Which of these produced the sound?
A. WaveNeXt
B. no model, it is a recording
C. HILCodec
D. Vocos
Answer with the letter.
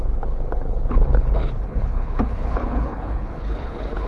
C